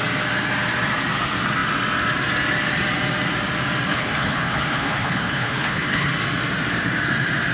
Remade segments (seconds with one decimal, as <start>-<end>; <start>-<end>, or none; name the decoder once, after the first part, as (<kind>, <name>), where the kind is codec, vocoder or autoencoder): 3.9-6.1 (codec, HILCodec)